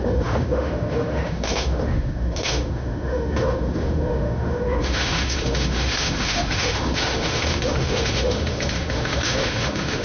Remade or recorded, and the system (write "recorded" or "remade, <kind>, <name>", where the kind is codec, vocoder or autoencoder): remade, autoencoder, DAC-VAE